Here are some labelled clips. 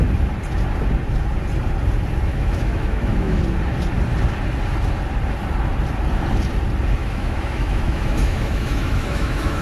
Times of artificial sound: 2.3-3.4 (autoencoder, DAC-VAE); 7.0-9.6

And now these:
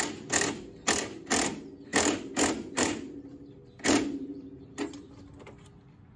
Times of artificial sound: 1.9-5.1 (vocoder, BigVGAN v2)

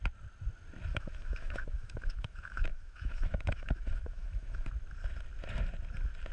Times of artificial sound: 0.9-4.7 (autoencoder, DAC-VAE)

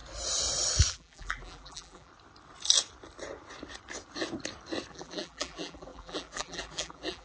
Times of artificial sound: 0.9-2.1 (vocoder, BigVGAN v2); 4.9-7.2

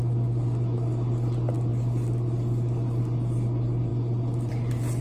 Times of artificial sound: none